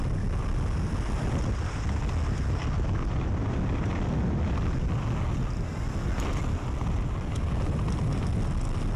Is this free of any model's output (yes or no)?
yes